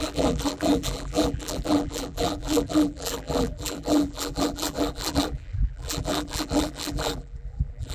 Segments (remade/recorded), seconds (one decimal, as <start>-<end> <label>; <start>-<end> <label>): 0.0-7.9 remade